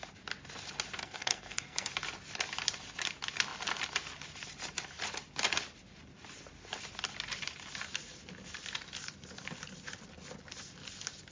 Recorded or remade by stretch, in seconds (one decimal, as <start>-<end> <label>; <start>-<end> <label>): 0.0-1.0 recorded; 1.0-1.9 remade; 1.9-11.3 recorded